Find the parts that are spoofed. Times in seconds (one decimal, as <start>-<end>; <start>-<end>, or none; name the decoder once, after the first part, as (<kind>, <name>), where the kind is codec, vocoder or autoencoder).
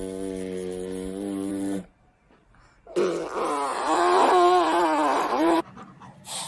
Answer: 1.5-2.4 (vocoder, BigVGAN v2); 3.7-4.3; 5.1-5.6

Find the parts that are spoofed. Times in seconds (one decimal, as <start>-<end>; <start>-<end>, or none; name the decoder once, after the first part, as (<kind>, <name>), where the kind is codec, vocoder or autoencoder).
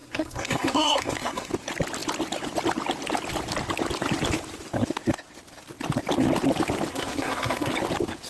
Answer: 0.0-1.5 (codec, SNAC); 6.9-7.7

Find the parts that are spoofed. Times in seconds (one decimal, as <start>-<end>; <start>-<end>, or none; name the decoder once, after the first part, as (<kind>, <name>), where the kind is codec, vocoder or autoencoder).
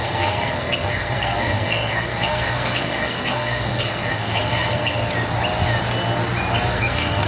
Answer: 0.0-5.0 (codec, SNAC); 6.7-7.3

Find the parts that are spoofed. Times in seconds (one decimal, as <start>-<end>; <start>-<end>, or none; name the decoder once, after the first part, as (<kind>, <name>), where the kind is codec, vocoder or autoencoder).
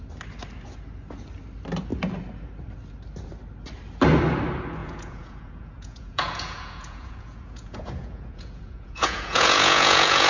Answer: 4.8-10.3 (vocoder, Vocos)